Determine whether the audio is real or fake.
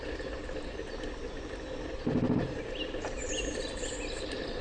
real